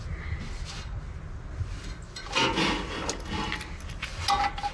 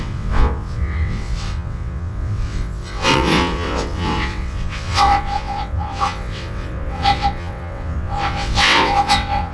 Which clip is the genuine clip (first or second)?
first